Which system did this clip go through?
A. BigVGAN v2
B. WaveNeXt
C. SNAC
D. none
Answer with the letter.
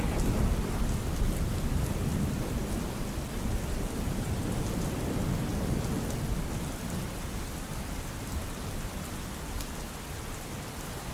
D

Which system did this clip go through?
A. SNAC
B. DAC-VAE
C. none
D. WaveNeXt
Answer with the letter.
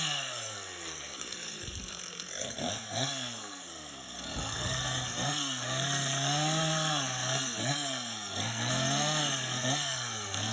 A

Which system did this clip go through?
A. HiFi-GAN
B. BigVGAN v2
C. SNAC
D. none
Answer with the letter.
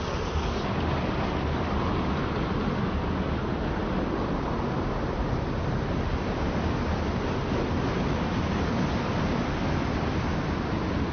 D